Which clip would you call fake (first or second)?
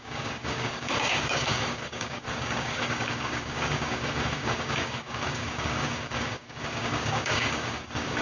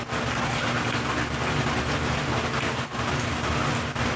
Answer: first